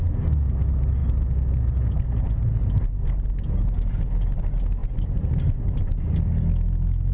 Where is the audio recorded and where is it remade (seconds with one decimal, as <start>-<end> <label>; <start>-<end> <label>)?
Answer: 0.0-7.1 recorded